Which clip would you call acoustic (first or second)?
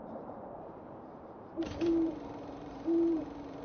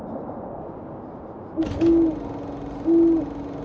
second